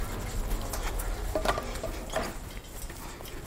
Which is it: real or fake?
real